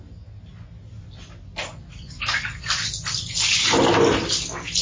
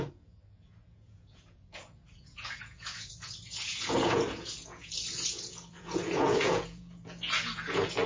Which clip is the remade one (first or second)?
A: second